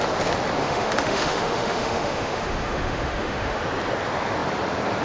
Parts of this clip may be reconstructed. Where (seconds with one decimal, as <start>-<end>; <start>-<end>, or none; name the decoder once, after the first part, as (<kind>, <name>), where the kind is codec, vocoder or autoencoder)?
0.6-3.6 (autoencoder, DAC-VAE)

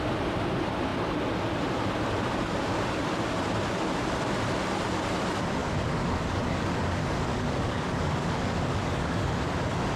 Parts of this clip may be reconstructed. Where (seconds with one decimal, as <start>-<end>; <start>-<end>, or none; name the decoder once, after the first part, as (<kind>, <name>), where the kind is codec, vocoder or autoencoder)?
5.6-9.5 (codec, DAC)

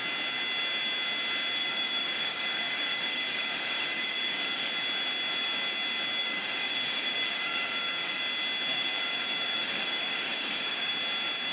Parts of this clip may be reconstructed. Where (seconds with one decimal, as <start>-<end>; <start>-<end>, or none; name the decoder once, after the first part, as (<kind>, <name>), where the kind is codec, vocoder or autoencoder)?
1.6-4.7 (codec, DAC); 6.2-8.2; 8.7-10.9

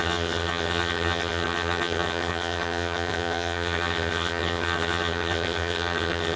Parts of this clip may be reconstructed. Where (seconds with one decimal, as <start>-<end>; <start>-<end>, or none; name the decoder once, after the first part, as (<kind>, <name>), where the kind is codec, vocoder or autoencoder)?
0.0-6.4 (vocoder, HiFi-GAN)

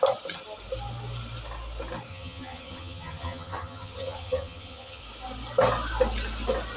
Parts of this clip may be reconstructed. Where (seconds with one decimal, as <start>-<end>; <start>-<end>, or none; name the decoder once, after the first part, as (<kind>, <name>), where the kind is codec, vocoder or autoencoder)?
2.1-5.0 (vocoder, HiFi-GAN)

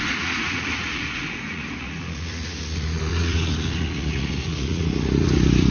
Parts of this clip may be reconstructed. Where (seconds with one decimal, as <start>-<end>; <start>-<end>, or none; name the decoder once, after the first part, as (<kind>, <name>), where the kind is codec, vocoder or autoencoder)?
0.0-5.7 (vocoder, Vocos)